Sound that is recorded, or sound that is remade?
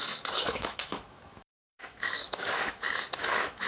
remade